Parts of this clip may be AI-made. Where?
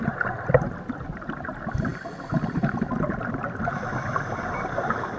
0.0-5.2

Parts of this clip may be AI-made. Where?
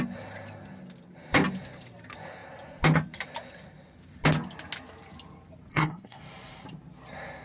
5.7-6.2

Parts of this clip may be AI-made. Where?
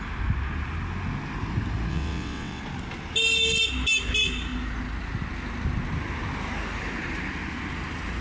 1.9-2.6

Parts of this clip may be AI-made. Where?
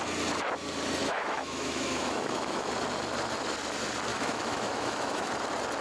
1.0-2.7; 4.1-5.3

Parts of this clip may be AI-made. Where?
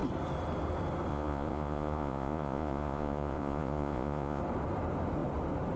1.1-4.4